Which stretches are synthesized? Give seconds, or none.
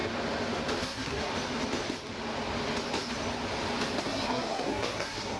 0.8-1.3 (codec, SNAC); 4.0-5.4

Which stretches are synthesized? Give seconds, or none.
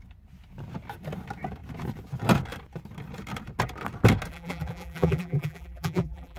4.3-6.4 (vocoder, BigVGAN v2)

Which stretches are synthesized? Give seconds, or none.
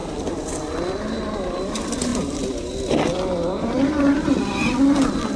0.0-0.6 (vocoder, BigVGAN v2)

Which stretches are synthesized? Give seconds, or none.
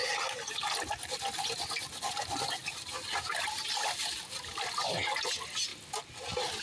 none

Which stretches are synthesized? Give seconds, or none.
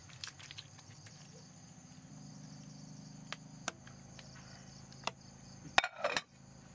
none